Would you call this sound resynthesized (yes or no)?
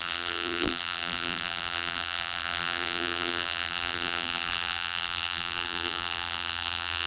yes